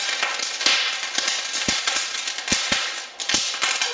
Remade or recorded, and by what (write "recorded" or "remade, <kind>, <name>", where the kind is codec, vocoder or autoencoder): recorded